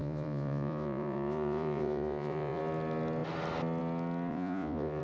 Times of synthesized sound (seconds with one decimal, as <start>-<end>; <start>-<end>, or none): 0.0-2.6; 4.3-5.0